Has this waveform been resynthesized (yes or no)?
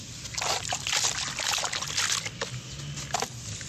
no